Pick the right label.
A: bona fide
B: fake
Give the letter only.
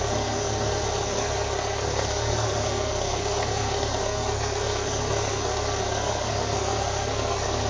B